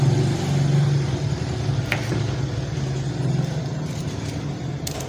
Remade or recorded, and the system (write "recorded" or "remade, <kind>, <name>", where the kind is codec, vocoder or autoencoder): recorded